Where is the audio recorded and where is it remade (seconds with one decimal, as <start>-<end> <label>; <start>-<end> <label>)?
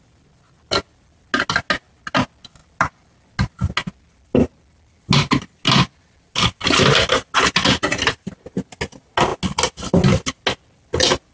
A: 0.0-11.3 recorded